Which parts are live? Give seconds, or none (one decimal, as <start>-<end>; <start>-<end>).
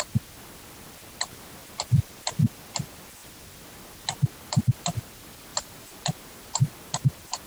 0.0-5.5; 6.5-7.5